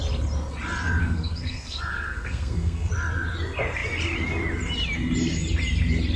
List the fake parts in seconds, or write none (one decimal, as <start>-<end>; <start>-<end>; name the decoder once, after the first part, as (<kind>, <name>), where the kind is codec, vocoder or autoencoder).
1.0-2.9 (codec, SNAC)